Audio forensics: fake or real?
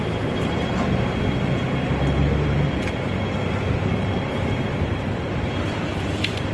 fake